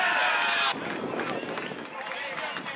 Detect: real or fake real